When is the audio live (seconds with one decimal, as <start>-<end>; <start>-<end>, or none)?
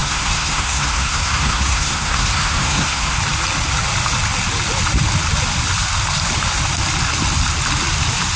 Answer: 3.2-8.4